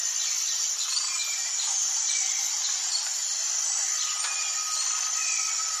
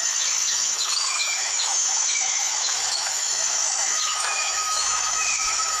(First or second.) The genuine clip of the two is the first